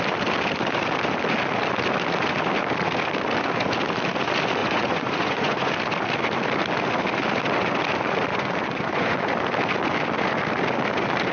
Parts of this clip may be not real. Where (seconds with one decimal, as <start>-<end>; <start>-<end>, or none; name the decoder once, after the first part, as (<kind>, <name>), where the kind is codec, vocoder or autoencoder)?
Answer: 4.6-5.7 (vocoder, Vocos); 8.3-9.3